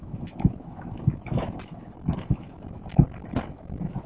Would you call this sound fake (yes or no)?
yes